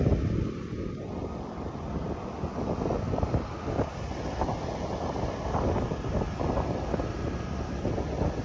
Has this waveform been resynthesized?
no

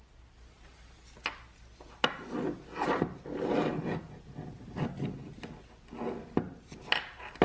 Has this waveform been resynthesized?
no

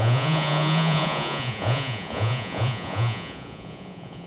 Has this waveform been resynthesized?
yes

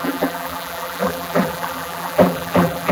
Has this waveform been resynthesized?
yes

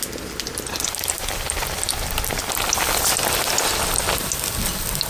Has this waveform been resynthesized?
no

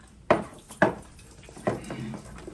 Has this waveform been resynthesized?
yes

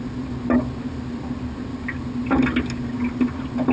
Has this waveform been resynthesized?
no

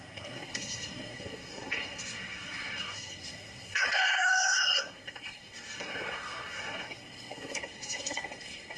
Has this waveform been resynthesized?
yes